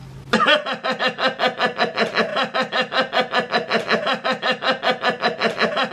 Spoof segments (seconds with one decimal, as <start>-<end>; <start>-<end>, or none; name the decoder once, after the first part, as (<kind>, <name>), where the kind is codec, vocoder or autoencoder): none